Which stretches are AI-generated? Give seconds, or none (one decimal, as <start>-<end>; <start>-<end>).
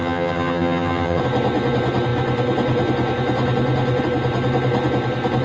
0.0-1.2